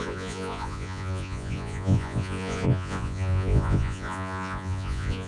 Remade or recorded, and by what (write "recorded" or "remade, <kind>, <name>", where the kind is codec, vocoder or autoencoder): remade, vocoder, Vocos